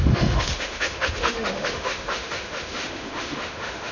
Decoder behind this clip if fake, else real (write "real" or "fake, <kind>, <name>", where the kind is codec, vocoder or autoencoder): fake, autoencoder, DAC-VAE